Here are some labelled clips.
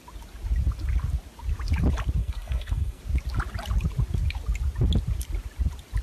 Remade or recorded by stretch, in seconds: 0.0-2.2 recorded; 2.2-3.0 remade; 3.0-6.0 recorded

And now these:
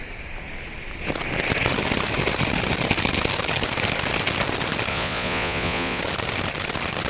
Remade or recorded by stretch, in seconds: 0.0-4.9 recorded; 4.9-6.0 remade; 6.0-7.1 recorded

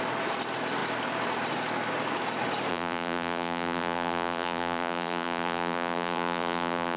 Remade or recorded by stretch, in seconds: 0.0-2.7 recorded; 2.7-7.0 remade

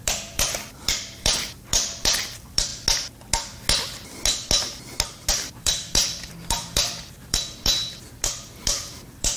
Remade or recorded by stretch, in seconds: 0.0-2.7 remade; 2.7-5.3 recorded; 5.3-9.4 remade

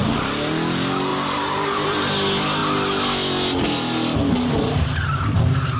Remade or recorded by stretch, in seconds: 0.0-1.1 recorded; 1.1-2.1 remade; 2.1-5.8 recorded